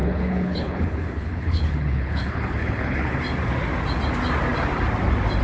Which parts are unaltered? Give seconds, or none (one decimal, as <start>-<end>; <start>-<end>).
3.2-5.4